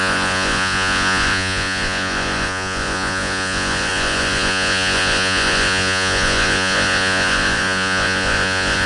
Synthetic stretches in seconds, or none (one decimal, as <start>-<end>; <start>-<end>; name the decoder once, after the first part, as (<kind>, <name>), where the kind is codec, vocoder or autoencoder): 0.0-8.9 (vocoder, Vocos)